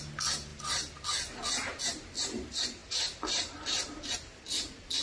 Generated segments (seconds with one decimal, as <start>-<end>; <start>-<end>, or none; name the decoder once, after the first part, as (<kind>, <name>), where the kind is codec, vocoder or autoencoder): none